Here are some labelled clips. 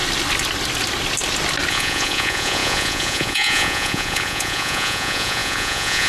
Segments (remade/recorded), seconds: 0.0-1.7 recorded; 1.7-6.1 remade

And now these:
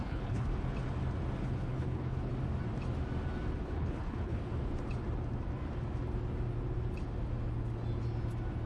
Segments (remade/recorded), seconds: 0.0-0.5 remade; 0.5-1.4 recorded; 1.4-2.3 remade; 2.3-3.6 recorded; 3.6-4.4 remade; 4.4-8.7 recorded

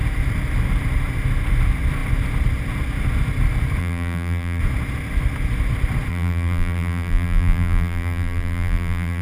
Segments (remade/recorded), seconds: 0.0-3.8 recorded; 3.8-4.6 remade; 4.6-6.1 recorded; 6.1-9.2 remade

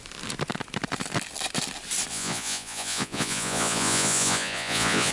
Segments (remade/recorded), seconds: 0.0-2.1 recorded; 2.1-5.1 remade